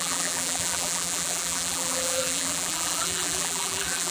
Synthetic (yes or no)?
yes